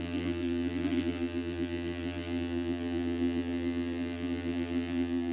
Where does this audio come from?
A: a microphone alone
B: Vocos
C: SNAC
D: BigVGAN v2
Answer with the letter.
D